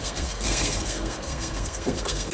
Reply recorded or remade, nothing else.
remade